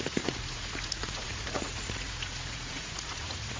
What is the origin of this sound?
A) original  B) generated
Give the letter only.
B